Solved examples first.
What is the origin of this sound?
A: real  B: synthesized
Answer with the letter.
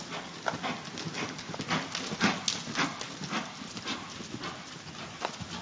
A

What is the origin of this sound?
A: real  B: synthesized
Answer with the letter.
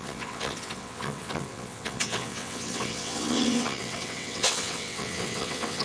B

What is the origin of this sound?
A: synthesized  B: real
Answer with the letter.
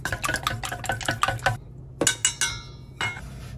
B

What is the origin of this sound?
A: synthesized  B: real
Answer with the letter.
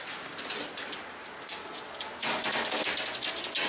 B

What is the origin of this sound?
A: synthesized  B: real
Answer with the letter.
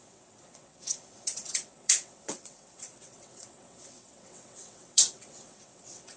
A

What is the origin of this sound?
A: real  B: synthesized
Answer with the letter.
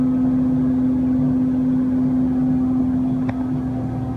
A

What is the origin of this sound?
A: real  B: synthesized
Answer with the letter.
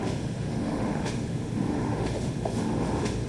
B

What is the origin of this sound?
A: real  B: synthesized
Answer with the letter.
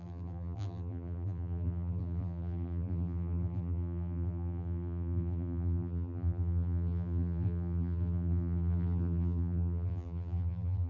B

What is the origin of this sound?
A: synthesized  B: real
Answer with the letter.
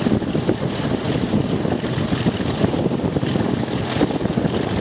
B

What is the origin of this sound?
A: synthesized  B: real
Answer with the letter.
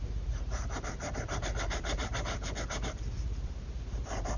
A